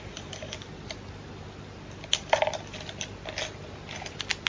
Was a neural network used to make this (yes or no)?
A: no